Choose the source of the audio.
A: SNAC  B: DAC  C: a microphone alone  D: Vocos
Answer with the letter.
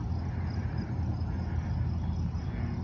C